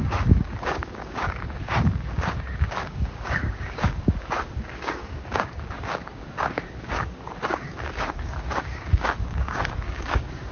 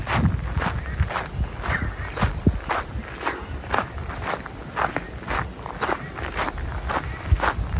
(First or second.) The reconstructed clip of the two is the first